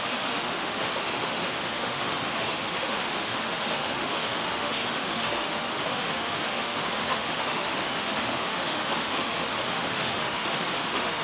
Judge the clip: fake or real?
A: fake